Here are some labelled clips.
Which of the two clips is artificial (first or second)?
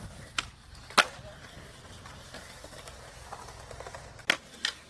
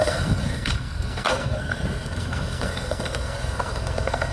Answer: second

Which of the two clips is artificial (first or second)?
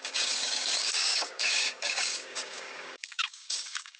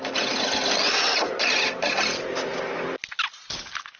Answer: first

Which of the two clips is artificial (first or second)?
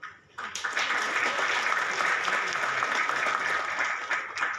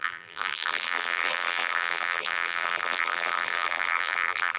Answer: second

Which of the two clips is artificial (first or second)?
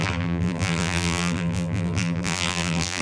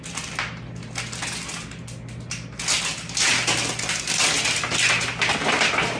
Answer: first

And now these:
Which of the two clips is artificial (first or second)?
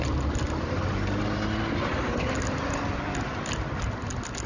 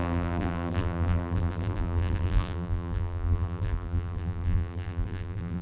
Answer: second